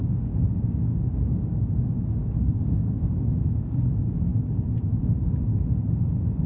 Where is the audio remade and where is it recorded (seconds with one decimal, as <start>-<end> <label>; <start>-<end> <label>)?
0.0-4.3 remade; 4.3-5.0 recorded; 5.0-5.5 remade; 5.5-6.5 recorded